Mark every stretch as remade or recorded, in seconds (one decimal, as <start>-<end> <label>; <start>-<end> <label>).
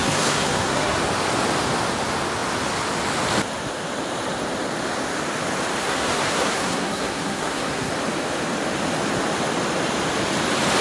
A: 0.0-1.0 remade; 1.0-5.8 recorded; 5.8-7.9 remade; 7.9-10.8 recorded